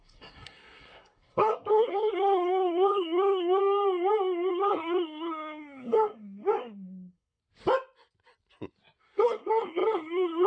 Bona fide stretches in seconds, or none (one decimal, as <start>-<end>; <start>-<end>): 3.6-4.5; 7.4-9.0